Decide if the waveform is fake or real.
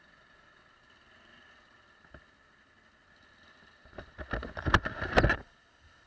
real